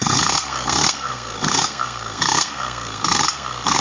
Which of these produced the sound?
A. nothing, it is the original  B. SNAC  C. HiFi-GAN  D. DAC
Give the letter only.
B